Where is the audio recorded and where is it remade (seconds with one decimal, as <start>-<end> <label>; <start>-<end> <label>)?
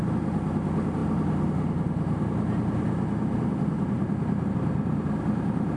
0.0-5.8 recorded